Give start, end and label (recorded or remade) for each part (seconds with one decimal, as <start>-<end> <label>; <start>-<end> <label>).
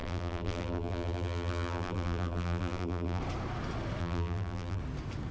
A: 0.0-3.2 remade; 3.2-4.0 recorded; 4.0-4.8 remade; 4.8-5.3 recorded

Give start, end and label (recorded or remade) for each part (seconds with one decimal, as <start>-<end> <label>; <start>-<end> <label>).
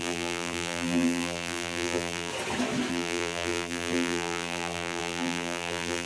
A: 0.0-2.3 remade; 2.3-2.9 recorded; 2.9-6.1 remade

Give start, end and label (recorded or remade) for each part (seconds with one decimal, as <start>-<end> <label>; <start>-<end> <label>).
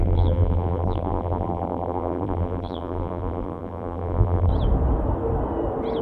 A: 0.0-4.5 remade; 4.5-6.0 recorded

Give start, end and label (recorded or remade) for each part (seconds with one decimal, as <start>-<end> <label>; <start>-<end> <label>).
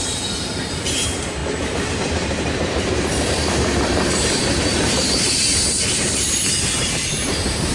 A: 0.0-1.4 remade; 1.4-1.9 recorded; 1.9-7.7 remade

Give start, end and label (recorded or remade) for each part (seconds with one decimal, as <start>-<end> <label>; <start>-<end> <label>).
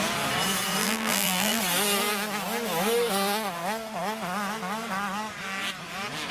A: 0.0-0.8 recorded; 0.8-1.6 remade; 1.6-6.3 recorded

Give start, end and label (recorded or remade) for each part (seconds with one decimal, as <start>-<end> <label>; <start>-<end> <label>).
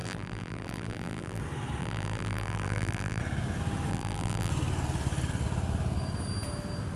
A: 0.0-1.4 remade; 1.4-1.8 recorded; 1.8-3.2 remade; 3.2-3.9 recorded; 3.9-4.5 remade; 4.5-7.0 recorded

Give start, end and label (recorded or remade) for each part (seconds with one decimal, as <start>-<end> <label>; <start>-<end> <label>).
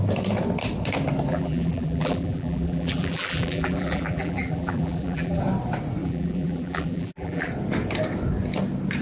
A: 0.0-1.3 recorded; 1.3-5.4 remade; 5.4-6.0 recorded; 6.0-7.5 remade; 7.5-9.0 recorded